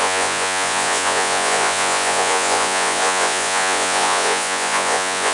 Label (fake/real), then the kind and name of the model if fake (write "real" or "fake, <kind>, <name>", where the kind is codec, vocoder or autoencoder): fake, vocoder, Vocos